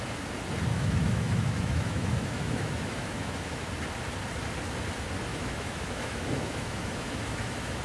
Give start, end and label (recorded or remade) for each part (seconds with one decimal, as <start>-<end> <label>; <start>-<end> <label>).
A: 0.0-0.7 recorded; 0.7-3.7 remade; 3.7-5.3 recorded; 5.3-7.8 remade